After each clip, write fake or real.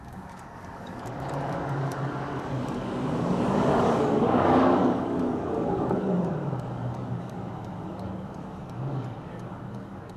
fake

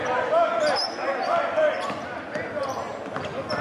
real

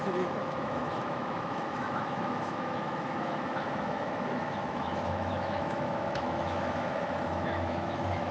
fake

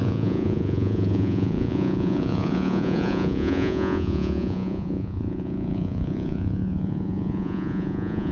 fake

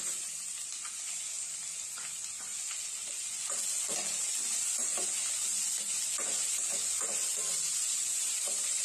real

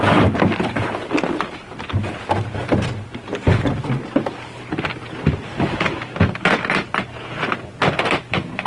real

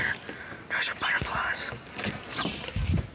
fake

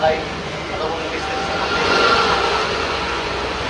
fake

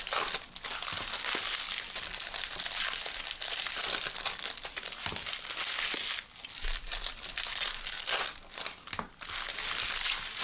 real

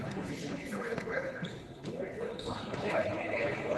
fake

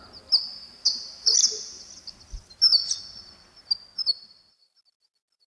real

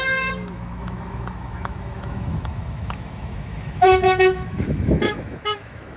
fake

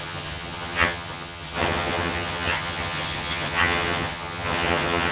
fake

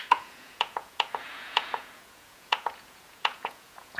fake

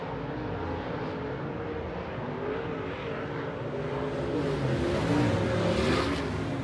real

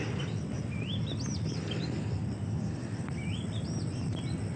real